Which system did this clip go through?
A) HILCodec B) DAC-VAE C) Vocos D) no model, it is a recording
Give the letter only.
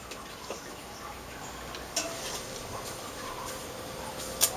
D